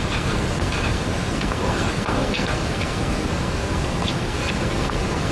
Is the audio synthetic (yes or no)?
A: yes